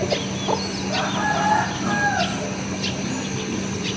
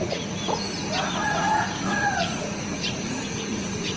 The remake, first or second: second